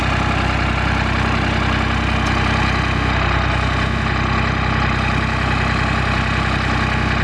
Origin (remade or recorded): recorded